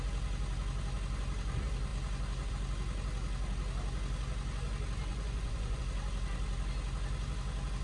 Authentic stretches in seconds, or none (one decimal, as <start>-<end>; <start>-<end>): 0.0-5.1; 5.8-7.8